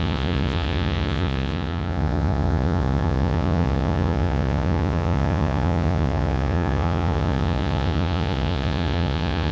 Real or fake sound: fake